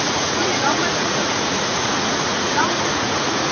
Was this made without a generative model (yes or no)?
no